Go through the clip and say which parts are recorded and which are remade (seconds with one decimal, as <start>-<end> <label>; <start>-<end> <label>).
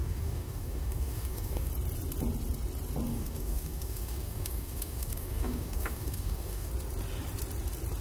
0.0-1.7 remade; 1.7-3.1 recorded; 3.1-6.7 remade; 6.7-8.0 recorded